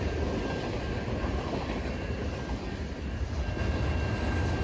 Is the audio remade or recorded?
recorded